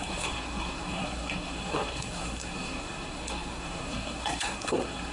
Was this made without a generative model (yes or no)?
no